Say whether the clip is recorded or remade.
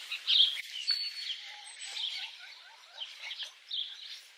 recorded